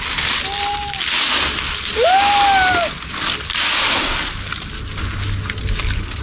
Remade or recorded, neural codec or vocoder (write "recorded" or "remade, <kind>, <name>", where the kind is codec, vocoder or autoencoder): recorded